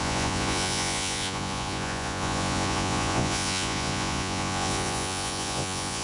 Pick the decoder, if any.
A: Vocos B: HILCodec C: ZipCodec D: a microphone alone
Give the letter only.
A